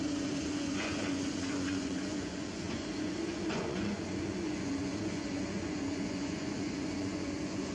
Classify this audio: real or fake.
fake